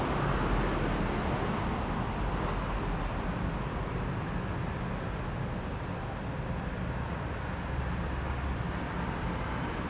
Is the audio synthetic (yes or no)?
no